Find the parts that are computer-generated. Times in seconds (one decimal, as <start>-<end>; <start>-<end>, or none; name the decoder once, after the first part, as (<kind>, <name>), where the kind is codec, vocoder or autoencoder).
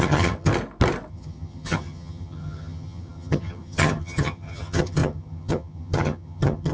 0.0-0.5 (vocoder, HiFi-GAN); 1.1-6.7